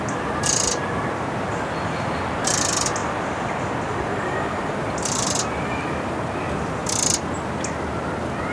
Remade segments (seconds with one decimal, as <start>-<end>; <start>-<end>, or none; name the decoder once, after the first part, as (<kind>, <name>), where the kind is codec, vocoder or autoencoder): 0.0-3.0 (vocoder, BigVGAN v2); 4.2-6.8